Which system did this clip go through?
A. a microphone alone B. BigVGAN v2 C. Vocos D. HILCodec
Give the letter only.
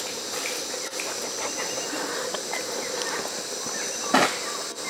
A